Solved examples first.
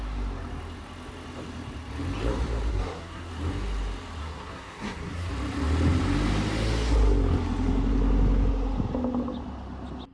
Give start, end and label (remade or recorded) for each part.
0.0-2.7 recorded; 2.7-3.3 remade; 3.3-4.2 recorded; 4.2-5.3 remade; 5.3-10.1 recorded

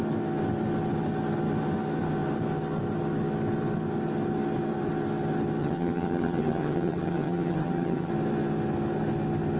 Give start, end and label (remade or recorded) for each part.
0.0-5.6 recorded; 5.6-8.1 remade; 8.1-9.6 recorded

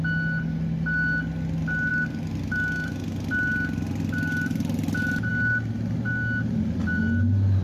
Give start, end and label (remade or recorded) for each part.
0.0-7.6 recorded

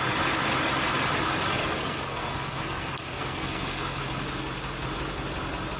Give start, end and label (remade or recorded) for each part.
0.0-1.6 recorded; 1.6-4.0 remade; 4.0-5.8 recorded

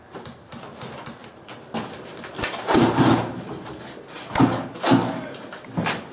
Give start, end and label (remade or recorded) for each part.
0.0-6.1 recorded

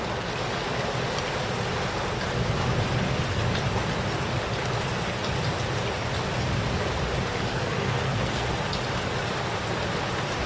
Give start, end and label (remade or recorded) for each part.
0.0-7.5 recorded; 7.5-8.5 remade; 8.5-10.5 recorded

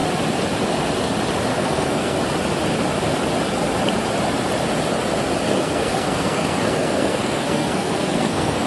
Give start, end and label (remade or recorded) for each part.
0.0-1.5 recorded; 1.5-2.2 remade; 2.2-5.5 recorded; 5.5-8.7 remade